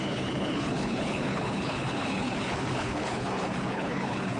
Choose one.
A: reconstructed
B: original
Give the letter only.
A